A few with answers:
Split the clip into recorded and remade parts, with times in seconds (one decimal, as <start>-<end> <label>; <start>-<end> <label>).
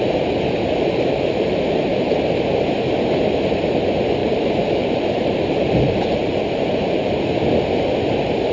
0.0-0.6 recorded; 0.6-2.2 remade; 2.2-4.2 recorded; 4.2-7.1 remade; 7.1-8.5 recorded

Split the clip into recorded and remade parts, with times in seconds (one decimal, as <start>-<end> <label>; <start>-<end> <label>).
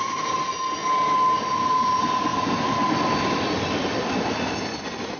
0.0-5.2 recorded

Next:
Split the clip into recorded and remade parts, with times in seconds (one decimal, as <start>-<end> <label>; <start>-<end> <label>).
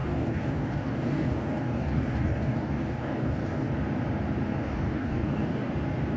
0.0-3.7 remade; 3.7-4.5 recorded; 4.5-5.7 remade; 5.7-6.2 recorded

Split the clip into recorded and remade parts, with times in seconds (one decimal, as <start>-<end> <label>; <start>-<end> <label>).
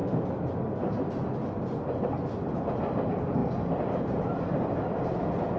0.0-5.6 recorded